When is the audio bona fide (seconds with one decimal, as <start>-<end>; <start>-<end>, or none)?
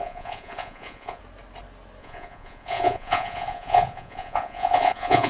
1.2-2.0